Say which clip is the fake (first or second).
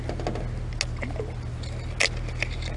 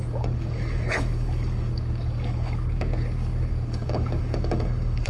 second